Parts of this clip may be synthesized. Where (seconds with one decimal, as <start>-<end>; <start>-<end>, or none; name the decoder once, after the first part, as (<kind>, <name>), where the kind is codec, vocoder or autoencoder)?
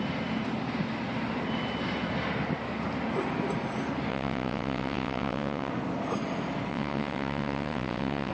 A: 4.1-5.7 (vocoder, WaveNeXt); 6.7-8.3